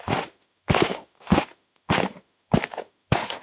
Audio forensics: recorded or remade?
remade